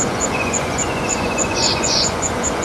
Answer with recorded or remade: remade